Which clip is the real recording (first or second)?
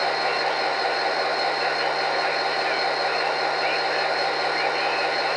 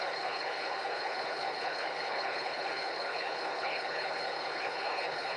first